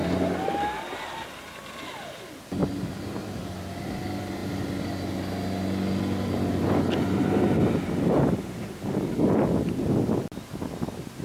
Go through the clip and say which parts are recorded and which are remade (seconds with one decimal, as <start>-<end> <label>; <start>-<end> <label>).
0.0-2.6 recorded; 2.6-3.4 remade; 3.4-11.2 recorded